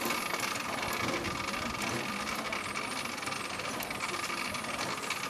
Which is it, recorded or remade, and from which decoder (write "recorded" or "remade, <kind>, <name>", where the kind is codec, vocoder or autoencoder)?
recorded